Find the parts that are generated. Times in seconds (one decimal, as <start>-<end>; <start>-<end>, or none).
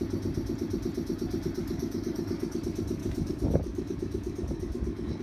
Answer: 1.6-2.6; 3.0-5.2